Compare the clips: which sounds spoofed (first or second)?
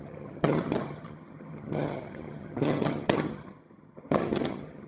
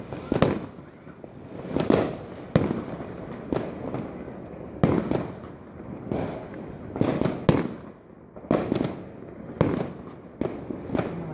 first